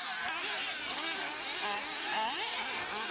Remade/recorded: recorded